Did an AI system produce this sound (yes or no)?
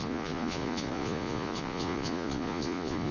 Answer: yes